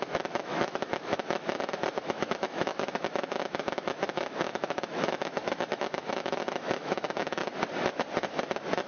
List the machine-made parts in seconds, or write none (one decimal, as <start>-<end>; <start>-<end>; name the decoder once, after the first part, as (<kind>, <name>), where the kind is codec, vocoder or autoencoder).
0.0-7.4 (autoencoder, DAC-VAE)